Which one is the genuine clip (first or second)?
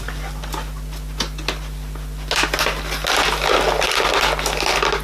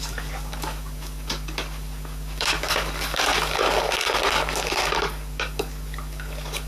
first